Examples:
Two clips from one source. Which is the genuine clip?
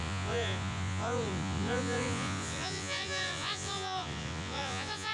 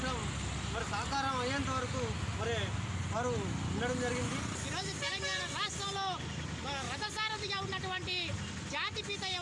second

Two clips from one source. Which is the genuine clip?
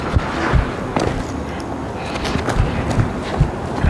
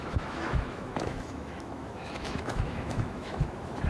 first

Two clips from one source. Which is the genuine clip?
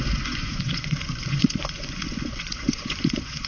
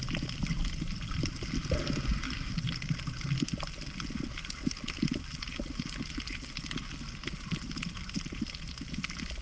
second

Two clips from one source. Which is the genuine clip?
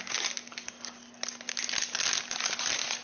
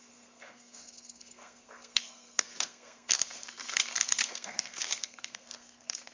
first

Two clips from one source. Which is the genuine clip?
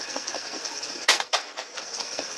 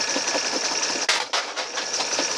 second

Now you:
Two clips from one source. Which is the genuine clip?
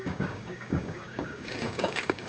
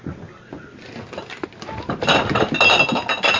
second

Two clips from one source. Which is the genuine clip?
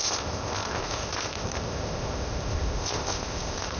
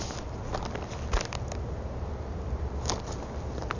second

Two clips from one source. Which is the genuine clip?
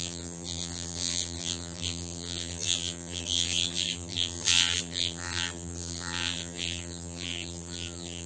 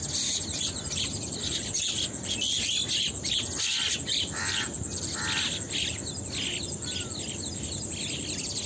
second